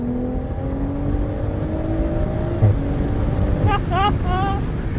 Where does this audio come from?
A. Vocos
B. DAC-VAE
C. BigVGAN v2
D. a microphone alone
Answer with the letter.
D